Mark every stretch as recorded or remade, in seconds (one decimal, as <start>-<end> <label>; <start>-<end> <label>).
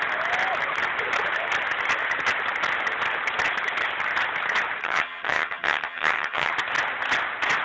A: 0.0-4.8 recorded; 4.8-6.5 remade; 6.5-7.6 recorded